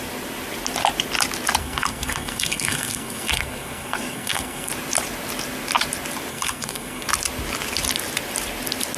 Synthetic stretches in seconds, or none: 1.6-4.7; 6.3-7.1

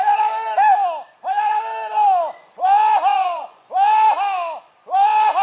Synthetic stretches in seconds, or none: 3.1-3.7

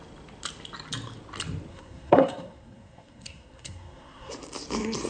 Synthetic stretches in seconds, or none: 1.7-4.3